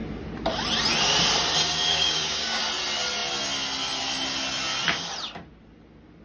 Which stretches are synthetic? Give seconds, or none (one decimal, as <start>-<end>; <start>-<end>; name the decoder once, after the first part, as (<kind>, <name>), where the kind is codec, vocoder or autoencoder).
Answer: 1.9-2.6 (codec, DAC)